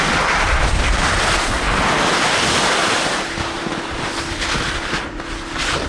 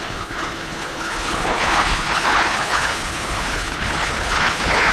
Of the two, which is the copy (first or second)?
second